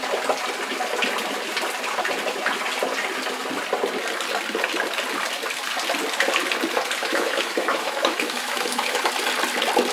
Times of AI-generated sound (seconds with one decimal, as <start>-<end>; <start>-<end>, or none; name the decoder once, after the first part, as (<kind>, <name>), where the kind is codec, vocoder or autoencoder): 7.0-9.1 (autoencoder, DAC-VAE)